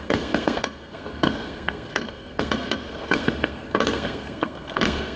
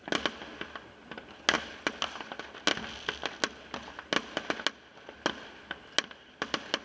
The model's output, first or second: first